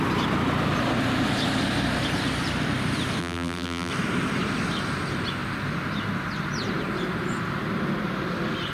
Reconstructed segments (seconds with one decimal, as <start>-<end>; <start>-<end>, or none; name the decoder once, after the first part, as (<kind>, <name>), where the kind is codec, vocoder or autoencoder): 3.2-3.9 (vocoder, BigVGAN v2)